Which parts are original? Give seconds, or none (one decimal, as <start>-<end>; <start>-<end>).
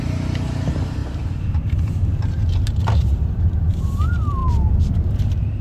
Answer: none